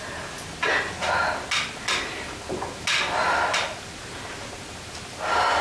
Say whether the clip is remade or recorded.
recorded